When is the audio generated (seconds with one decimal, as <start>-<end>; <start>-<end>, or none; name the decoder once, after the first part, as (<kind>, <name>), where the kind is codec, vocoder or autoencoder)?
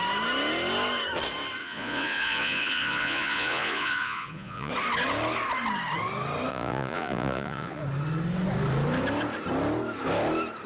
1.6-4.7 (vocoder, Vocos); 6.5-7.8